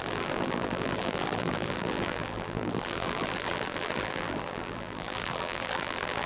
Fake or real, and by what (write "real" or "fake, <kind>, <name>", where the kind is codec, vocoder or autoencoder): fake, vocoder, BigVGAN v2